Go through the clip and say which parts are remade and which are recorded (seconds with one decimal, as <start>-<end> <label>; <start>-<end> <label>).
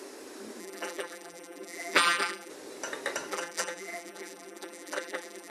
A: 0.0-0.6 recorded; 0.6-2.5 remade; 2.5-3.3 recorded; 3.3-5.5 remade